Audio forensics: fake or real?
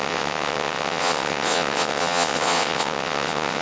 fake